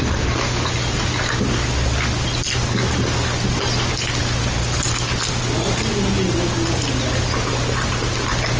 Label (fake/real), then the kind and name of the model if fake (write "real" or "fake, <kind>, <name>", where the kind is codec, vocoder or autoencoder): real